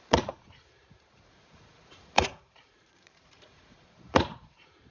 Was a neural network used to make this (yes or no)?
yes